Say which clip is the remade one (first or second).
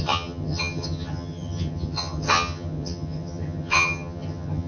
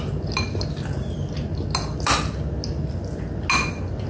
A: first